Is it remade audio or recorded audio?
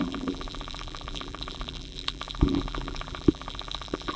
remade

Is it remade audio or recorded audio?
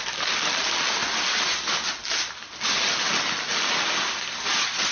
recorded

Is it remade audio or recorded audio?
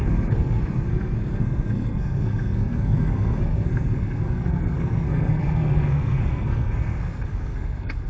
remade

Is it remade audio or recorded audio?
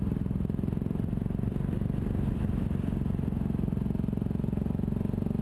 recorded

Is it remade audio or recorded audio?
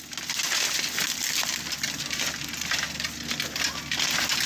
recorded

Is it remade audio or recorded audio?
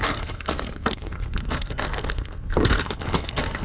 remade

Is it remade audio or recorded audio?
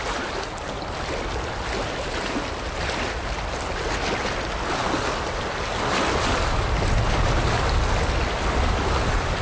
recorded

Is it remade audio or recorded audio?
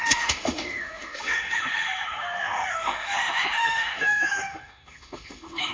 remade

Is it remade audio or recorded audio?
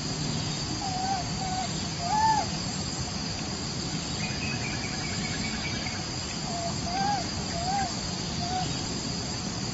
recorded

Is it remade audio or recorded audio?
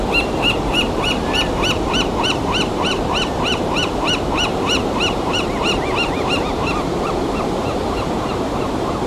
remade